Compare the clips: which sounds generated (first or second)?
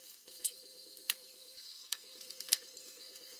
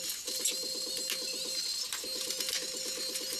first